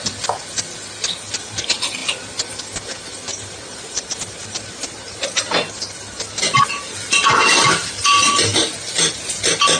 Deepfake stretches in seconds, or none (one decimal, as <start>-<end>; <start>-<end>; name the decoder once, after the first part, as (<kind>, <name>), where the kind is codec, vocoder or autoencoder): 3.3-5.8 (vocoder, BigVGAN v2)